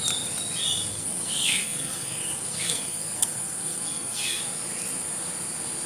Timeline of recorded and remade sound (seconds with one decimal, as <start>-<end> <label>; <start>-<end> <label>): 0.0-0.9 recorded; 0.9-4.4 remade; 4.4-5.9 recorded